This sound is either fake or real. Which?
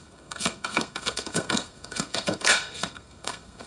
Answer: fake